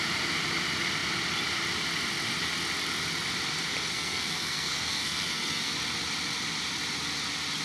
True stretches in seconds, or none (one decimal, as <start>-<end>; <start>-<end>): 0.0-3.9; 5.7-7.6